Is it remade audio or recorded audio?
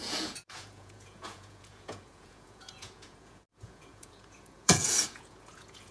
remade